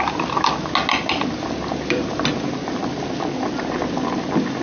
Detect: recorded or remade recorded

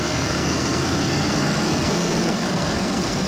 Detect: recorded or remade remade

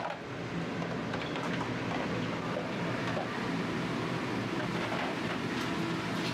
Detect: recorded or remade recorded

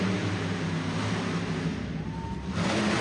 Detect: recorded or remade recorded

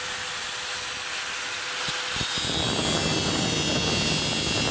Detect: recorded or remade recorded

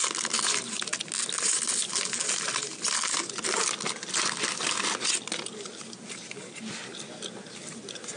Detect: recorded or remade recorded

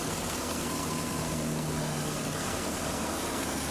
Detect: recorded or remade remade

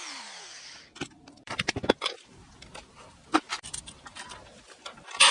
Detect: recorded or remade remade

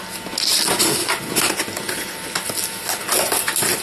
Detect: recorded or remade recorded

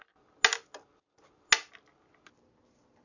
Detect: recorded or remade recorded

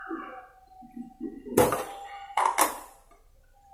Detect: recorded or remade recorded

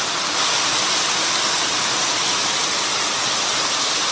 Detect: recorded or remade recorded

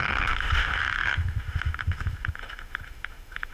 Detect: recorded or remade remade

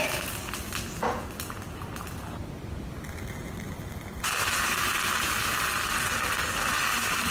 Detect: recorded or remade recorded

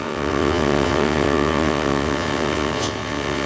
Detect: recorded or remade remade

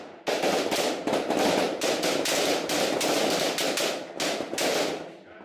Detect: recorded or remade recorded